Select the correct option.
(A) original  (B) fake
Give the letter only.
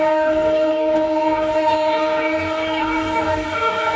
B